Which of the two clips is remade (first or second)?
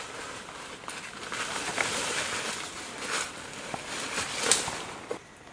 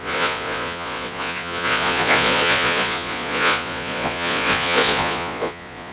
second